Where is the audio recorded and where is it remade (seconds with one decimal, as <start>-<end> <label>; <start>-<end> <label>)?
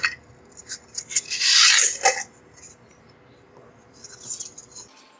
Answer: 0.0-5.2 recorded